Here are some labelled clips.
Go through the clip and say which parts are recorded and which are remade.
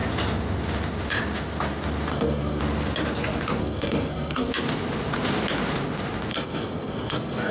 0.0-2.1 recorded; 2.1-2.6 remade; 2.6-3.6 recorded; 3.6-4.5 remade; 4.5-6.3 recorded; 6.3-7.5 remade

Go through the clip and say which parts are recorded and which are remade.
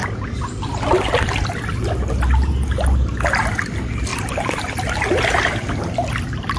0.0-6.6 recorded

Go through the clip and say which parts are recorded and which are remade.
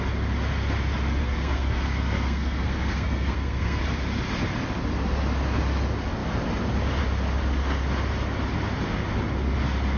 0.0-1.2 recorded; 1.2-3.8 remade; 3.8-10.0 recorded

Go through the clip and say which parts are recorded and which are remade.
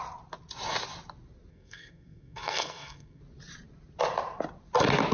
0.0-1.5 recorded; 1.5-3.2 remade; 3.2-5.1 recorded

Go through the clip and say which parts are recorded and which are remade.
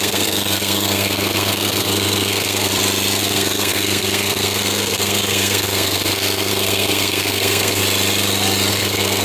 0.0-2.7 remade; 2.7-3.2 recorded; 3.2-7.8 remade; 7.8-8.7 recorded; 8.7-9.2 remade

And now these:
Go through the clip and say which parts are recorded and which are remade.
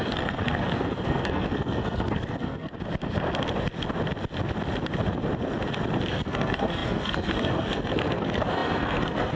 0.0-2.7 remade; 2.7-6.1 recorded; 6.1-9.4 remade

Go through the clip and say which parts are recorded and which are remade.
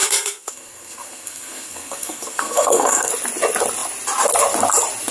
0.0-3.1 remade; 3.1-5.1 recorded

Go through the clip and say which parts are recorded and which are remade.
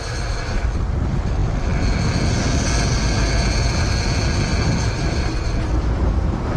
0.0-6.6 recorded